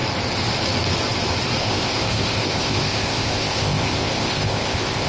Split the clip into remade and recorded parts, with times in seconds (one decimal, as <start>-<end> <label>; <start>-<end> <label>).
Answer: 0.0-1.6 recorded; 1.6-5.1 remade